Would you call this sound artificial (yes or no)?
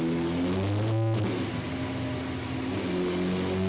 no